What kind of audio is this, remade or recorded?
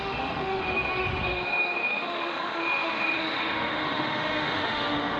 remade